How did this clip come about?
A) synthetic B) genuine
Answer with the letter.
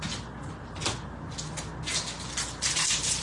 B